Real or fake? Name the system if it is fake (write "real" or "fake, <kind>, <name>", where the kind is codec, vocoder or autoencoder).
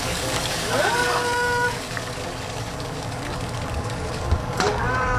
fake, codec, DAC